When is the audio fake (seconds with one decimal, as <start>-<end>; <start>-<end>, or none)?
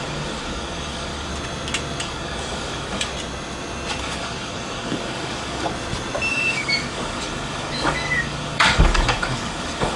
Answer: 0.0-1.3; 2.0-3.1; 4.0-5.7; 6.3-10.0